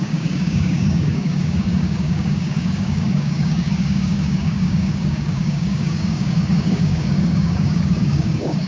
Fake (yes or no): yes